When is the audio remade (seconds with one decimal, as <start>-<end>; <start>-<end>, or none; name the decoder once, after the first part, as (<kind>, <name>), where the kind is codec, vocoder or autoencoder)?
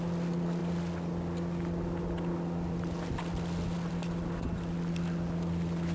none